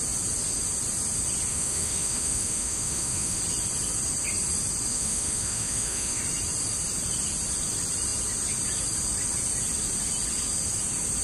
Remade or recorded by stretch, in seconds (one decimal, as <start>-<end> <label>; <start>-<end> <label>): 0.0-1.5 recorded; 1.5-3.4 remade; 3.4-4.9 recorded; 4.9-6.2 remade; 6.2-11.2 recorded